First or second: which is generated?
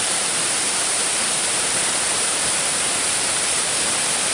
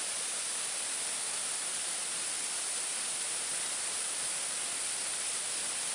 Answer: first